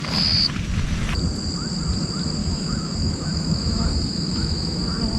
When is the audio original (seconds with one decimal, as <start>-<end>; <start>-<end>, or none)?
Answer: 0.0-2.4; 4.8-5.2